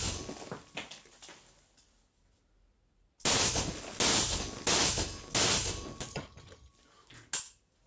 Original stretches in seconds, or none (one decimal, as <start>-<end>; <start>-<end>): 0.0-6.1; 6.7-7.9